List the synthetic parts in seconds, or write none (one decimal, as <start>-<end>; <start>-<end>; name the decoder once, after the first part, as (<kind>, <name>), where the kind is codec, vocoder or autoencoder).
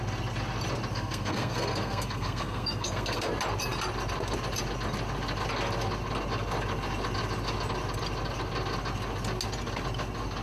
0.9-3.3 (codec, SNAC)